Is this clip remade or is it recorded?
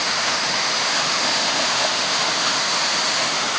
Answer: remade